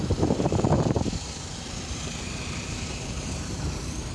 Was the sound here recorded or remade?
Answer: remade